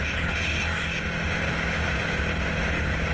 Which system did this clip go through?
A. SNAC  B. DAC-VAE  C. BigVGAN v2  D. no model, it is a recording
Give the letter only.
D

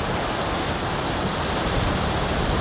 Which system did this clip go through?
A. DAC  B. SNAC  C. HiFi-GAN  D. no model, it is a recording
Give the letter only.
D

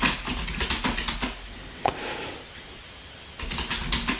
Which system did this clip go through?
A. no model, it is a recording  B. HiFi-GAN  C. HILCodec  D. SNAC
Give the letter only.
A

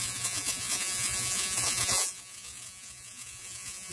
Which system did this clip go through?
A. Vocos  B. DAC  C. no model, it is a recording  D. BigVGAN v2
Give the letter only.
A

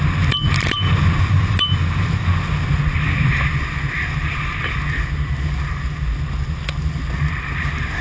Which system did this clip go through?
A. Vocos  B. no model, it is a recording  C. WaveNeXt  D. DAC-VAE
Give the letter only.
B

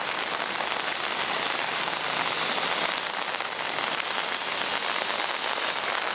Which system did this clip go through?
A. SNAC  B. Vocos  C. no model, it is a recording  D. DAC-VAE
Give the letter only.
C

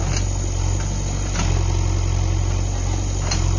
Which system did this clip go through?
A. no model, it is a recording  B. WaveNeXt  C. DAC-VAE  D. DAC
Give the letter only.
A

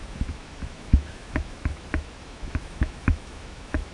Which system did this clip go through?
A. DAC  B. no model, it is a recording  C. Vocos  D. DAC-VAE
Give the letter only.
D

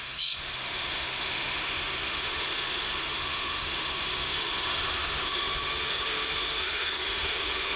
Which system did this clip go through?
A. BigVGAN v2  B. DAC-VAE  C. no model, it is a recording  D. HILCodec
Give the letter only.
B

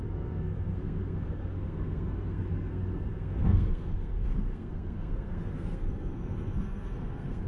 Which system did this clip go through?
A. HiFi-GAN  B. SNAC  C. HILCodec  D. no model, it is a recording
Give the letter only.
B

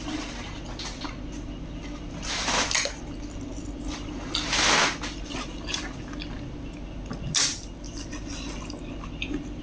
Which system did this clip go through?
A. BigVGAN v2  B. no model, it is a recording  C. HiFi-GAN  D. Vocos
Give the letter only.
B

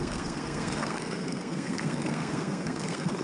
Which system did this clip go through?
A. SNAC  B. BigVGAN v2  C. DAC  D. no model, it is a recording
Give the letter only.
A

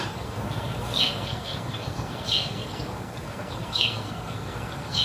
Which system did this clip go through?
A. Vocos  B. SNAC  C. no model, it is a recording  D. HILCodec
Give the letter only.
B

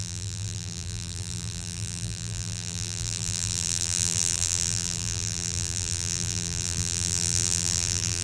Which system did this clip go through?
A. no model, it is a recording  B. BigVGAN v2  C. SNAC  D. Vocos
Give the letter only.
B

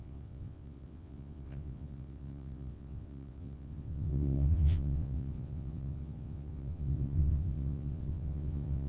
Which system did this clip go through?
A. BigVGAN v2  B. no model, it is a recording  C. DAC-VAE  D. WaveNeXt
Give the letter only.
D